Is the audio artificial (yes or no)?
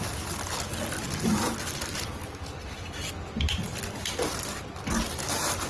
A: no